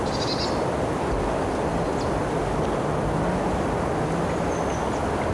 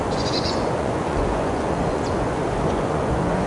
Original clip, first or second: first